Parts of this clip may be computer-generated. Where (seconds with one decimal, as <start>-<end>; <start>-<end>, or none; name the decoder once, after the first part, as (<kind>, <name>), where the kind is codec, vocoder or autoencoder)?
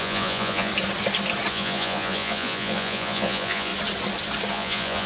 0.0-0.7 (vocoder, Vocos); 1.5-3.7; 4.5-5.1